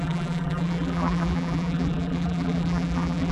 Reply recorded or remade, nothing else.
remade